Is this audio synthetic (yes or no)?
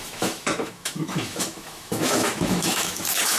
yes